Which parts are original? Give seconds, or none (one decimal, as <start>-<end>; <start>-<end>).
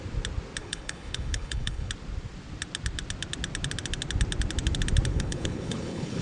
0.0-0.6; 1.9-5.1